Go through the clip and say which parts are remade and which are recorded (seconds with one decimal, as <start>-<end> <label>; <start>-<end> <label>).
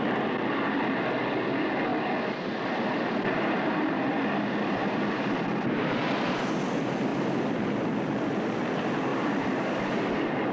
0.0-1.9 recorded; 1.9-6.5 remade; 6.5-7.1 recorded; 7.1-7.8 remade; 7.8-9.1 recorded; 9.1-10.5 remade